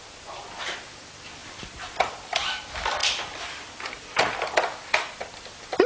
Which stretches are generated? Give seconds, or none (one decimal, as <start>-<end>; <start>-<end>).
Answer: 1.4-2.6; 3.0-4.3